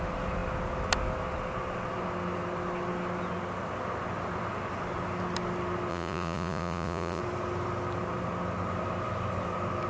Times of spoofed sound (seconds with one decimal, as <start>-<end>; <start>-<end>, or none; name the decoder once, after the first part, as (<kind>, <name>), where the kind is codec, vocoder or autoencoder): 5.9-7.2 (vocoder, Vocos)